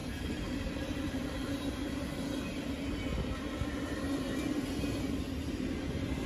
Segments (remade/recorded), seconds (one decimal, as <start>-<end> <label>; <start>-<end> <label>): 0.0-2.5 remade; 2.5-6.3 recorded

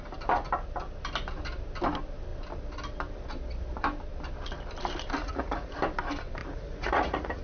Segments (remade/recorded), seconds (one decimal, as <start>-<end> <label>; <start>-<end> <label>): 0.0-5.2 recorded; 5.2-5.8 remade; 5.8-6.4 recorded; 6.4-7.4 remade

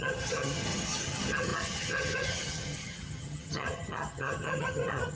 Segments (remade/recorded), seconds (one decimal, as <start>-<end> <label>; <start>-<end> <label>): 0.0-5.2 remade

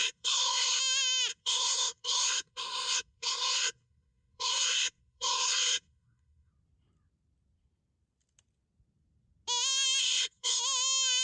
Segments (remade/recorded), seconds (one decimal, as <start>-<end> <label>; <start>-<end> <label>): 0.0-0.8 remade; 0.8-1.3 recorded; 1.3-6.5 remade; 6.5-10.0 recorded; 10.0-10.6 remade; 10.6-11.2 recorded

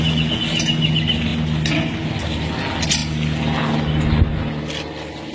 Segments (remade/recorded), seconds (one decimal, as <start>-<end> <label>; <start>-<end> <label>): 0.0-5.3 recorded

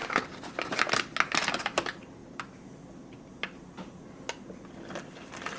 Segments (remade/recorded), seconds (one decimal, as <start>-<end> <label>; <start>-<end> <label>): 0.0-5.6 recorded